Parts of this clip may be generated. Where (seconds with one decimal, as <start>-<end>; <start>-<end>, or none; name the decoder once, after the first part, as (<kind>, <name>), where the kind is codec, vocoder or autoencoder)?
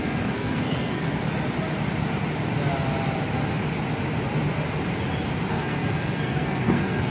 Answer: 0.0-1.2 (codec, SNAC); 5.5-7.1